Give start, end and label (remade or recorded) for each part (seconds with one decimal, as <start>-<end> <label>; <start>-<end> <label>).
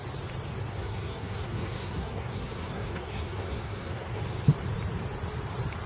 0.0-0.7 recorded; 0.7-4.2 remade; 4.2-5.9 recorded